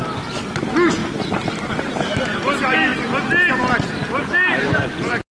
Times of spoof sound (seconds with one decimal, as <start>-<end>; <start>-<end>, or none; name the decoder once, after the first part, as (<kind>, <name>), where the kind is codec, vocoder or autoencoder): 1.0-2.1 (vocoder, BigVGAN v2)